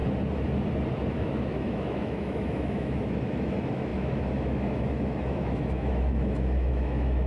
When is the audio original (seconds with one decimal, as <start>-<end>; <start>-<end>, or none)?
0.0-1.1